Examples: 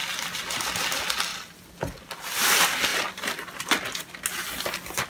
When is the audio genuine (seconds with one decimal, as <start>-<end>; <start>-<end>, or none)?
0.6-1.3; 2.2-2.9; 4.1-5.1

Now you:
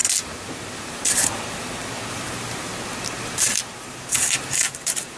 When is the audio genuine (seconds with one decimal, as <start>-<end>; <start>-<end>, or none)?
0.0-2.1; 2.7-3.7

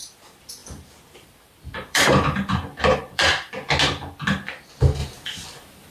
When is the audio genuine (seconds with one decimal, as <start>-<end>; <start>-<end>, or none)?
0.0-0.6; 3.5-5.9